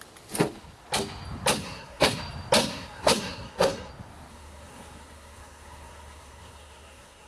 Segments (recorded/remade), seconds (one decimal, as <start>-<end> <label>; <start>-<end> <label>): 0.0-1.6 recorded; 1.6-2.2 remade; 2.2-2.6 recorded; 2.6-3.9 remade; 3.9-4.3 recorded; 4.3-7.3 remade